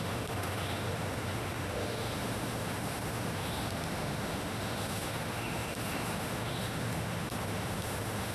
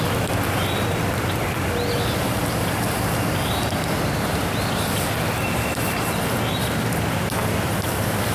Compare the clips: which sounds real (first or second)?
second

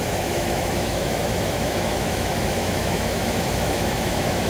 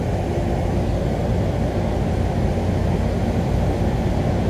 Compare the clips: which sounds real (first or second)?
second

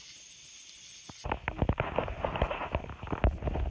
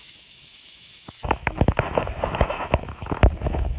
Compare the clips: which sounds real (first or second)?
first